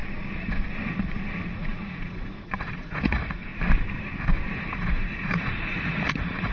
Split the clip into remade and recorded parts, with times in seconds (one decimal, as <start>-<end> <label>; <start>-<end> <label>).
0.0-1.5 recorded; 1.5-3.5 remade; 3.5-4.6 recorded; 4.6-6.5 remade